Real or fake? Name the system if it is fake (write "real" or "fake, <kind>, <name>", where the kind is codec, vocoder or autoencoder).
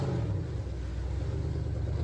real